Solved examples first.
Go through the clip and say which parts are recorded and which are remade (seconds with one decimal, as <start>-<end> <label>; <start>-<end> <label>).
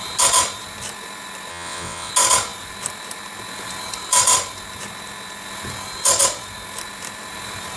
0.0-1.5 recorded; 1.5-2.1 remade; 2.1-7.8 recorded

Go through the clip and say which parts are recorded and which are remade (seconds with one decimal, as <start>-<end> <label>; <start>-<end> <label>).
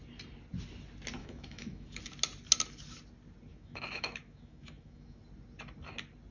0.0-1.2 recorded; 1.2-2.0 remade; 2.0-3.5 recorded; 3.5-5.2 remade; 5.2-6.3 recorded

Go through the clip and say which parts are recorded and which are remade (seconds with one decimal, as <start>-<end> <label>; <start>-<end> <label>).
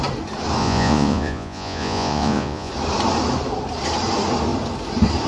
0.0-0.6 recorded; 0.6-2.7 remade; 2.7-5.3 recorded